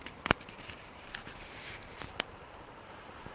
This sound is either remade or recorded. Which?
remade